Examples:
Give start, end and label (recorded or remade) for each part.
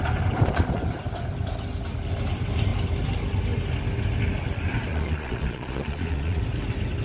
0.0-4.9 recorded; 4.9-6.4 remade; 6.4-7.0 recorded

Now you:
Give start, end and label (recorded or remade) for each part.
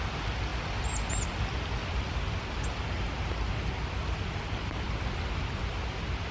0.0-6.3 recorded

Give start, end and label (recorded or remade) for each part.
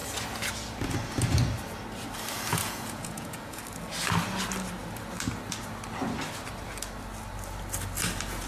0.0-2.5 recorded; 2.5-3.6 remade; 3.6-8.5 recorded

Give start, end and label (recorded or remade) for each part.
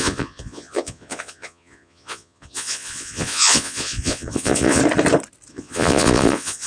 0.0-4.8 remade; 4.8-5.5 recorded; 5.5-6.7 remade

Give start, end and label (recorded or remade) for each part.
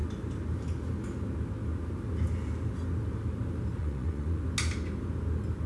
0.0-3.8 recorded; 3.8-4.4 remade; 4.4-5.7 recorded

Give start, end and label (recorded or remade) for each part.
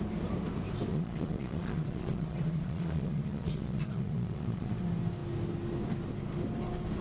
0.0-0.9 recorded; 0.9-4.8 remade; 4.8-7.0 recorded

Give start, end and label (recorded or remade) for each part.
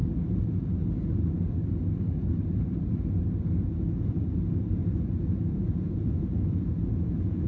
0.0-4.8 recorded; 4.8-7.5 remade